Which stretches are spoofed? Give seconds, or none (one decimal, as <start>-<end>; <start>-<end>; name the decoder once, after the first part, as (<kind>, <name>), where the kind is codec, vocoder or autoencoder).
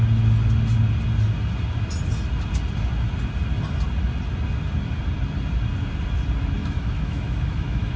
6.6-8.0 (autoencoder, DAC-VAE)